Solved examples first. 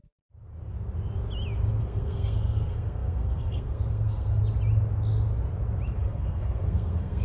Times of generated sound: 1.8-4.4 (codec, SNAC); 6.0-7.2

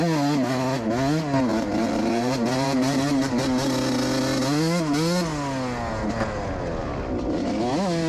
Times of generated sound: 1.5-3.4 (vocoder, BigVGAN v2)

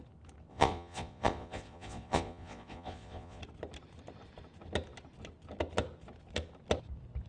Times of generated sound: 0.5-3.4 (vocoder, Vocos)

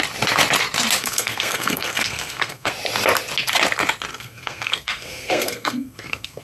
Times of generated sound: 1.0-2.7 (codec, SNAC); 4.1-6.4

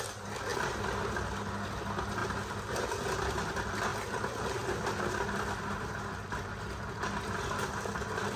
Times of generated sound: none

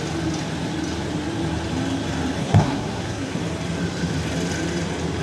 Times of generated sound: 2.4-3.4 (codec, SNAC)